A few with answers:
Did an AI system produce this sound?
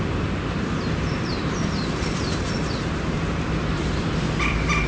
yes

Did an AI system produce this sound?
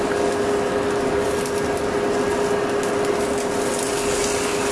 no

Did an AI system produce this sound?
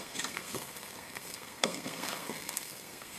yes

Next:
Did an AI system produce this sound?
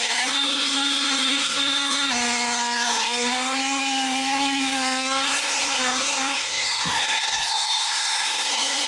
yes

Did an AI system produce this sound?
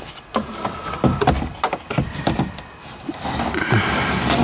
no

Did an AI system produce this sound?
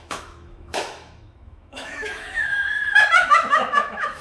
yes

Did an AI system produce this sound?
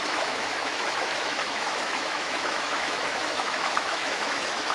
yes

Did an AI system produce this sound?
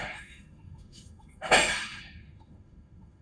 yes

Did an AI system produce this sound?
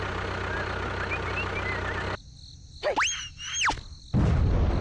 no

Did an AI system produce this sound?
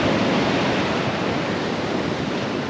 no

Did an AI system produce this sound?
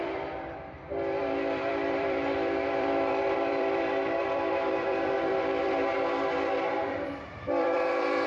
yes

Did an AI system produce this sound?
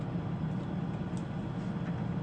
no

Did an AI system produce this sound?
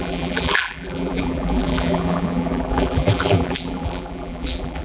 yes